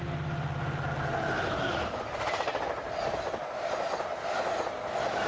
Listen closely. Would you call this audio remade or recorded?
recorded